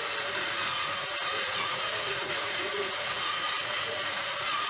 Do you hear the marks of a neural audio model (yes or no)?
yes